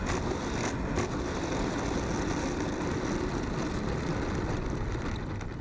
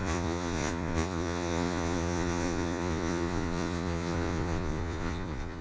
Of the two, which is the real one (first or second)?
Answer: first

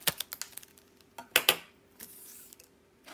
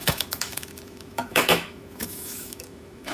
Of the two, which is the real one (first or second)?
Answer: first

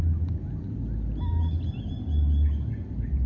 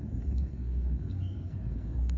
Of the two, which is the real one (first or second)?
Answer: first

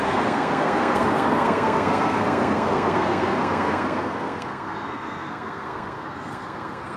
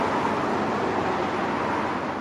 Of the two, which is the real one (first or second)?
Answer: second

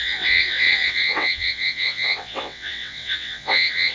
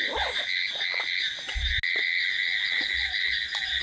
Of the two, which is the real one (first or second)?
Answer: second